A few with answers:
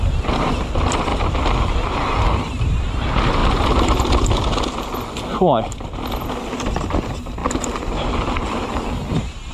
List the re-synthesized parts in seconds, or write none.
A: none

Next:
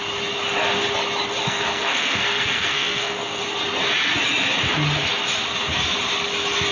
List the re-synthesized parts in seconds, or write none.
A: 1.4-3.4 (codec, SNAC)